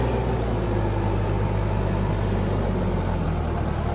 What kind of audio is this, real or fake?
real